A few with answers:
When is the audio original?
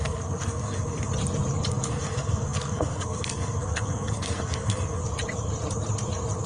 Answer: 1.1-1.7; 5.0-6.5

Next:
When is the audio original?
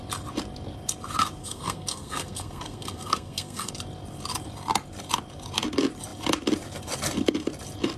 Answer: 0.0-1.4; 3.7-8.0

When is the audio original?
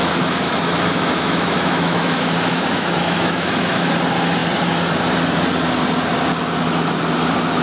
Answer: 3.9-7.6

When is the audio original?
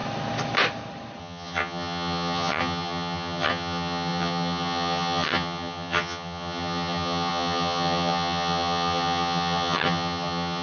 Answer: 0.0-1.2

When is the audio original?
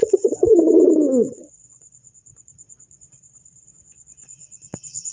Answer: none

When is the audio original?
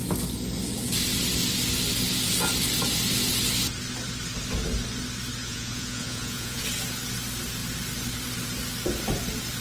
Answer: 0.0-5.4; 6.6-9.6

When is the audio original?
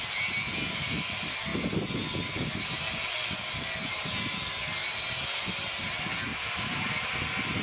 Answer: 0.0-7.6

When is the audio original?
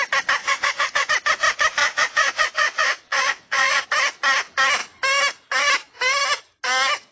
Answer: 0.0-0.4; 1.1-1.8; 3.8-7.1